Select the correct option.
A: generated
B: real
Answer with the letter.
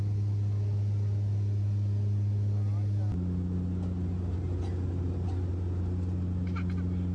B